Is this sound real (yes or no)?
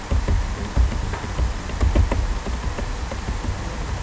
no